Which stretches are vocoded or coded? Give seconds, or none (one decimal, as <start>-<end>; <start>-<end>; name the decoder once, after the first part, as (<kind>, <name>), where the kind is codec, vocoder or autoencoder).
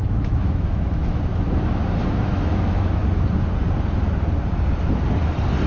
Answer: 0.0-1.3 (autoencoder, DAC-VAE); 2.0-3.0